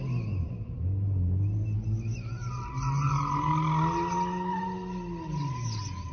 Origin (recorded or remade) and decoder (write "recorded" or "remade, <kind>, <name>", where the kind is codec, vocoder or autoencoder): recorded